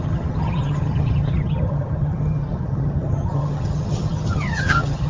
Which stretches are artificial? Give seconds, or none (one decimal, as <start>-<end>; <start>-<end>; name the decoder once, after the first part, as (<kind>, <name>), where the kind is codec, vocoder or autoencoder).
0.0-5.1 (vocoder, HiFi-GAN)